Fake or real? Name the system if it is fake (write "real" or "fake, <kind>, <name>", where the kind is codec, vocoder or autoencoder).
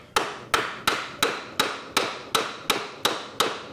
real